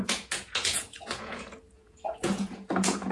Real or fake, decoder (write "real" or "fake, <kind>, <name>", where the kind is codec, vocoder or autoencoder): fake, vocoder, Vocos